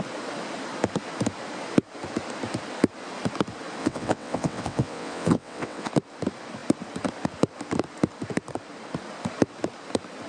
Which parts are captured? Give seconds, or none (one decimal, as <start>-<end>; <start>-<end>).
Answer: 0.0-3.8; 5.9-10.3